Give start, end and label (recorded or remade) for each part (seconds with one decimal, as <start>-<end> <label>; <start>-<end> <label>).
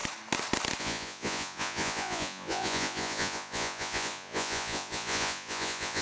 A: 0.0-0.8 recorded; 0.8-6.0 remade